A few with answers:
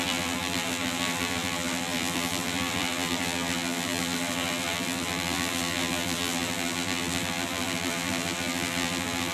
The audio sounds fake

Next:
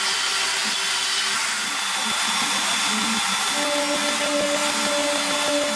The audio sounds real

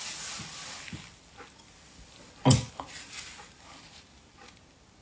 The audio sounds real